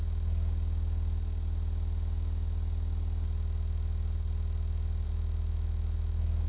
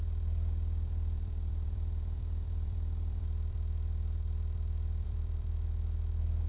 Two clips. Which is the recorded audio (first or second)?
first